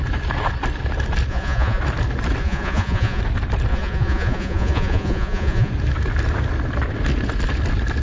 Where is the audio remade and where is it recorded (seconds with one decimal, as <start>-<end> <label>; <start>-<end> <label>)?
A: 0.0-1.3 recorded; 1.3-1.8 remade; 1.8-2.4 recorded; 2.4-3.2 remade; 3.2-3.7 recorded; 3.7-5.7 remade; 5.7-8.0 recorded